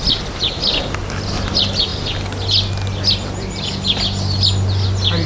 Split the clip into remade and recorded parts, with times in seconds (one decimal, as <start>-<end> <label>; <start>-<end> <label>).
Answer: 0.0-5.3 recorded